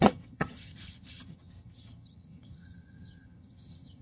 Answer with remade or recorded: remade